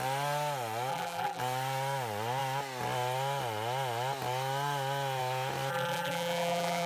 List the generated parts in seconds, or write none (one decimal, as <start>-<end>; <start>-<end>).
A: 0.9-1.4; 5.7-6.9